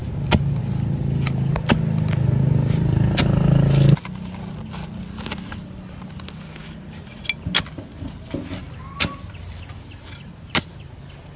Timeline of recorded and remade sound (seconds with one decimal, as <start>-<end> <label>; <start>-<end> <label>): 0.0-11.4 recorded